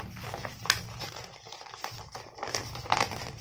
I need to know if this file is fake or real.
real